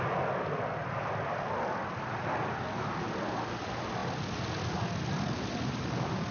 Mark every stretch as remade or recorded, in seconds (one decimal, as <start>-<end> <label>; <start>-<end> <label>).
0.0-6.3 recorded